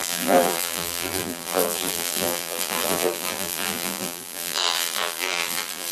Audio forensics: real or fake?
fake